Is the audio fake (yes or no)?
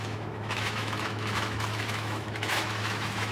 yes